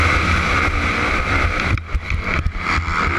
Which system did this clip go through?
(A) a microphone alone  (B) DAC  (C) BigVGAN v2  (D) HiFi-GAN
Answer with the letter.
C